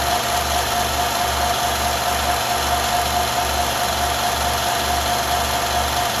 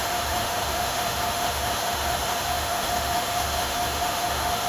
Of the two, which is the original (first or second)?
first